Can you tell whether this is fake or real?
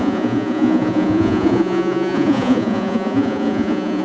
fake